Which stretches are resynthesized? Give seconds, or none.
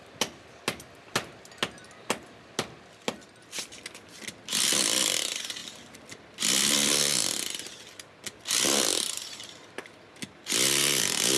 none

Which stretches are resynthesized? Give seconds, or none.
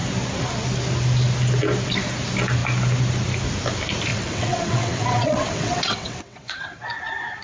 4.1-6.8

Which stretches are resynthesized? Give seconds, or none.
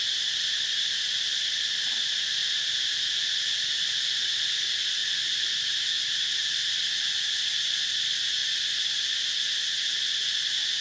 0.0-2.4; 3.2-8.4; 9.9-10.8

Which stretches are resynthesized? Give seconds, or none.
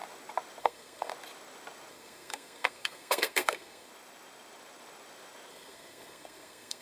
0.6-1.1; 1.9-3.9; 5.5-6.8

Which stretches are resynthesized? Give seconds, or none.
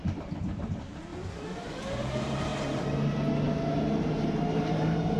0.0-1.1; 1.8-2.5; 4.5-5.2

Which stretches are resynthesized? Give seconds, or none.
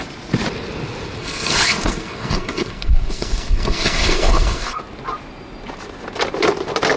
1.2-4.8